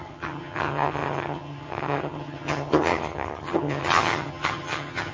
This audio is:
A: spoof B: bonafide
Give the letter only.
A